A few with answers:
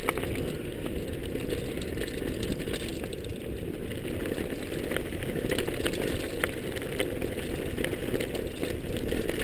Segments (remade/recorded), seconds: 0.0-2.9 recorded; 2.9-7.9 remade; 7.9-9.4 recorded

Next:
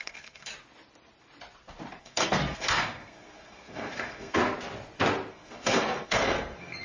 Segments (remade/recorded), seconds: 0.0-0.5 remade; 0.5-2.0 recorded; 2.0-4.4 remade; 4.4-5.3 recorded; 5.3-6.8 remade